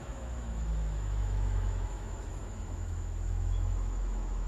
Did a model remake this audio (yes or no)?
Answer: yes